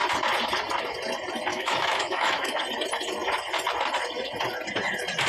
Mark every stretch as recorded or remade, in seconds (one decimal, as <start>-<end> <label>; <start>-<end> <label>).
0.0-1.5 recorded; 1.5-2.6 remade; 2.6-5.3 recorded